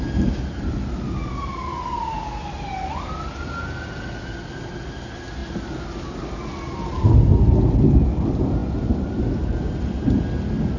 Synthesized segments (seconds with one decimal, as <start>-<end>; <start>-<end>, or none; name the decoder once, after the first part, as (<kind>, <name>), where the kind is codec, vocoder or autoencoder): none